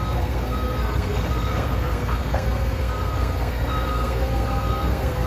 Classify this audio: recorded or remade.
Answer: remade